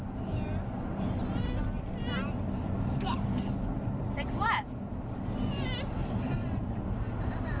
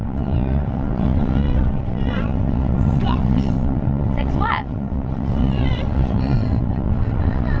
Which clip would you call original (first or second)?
first